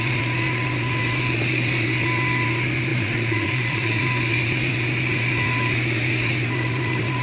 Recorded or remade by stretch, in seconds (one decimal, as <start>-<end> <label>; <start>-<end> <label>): 0.0-2.9 recorded; 2.9-4.0 remade; 4.0-7.2 recorded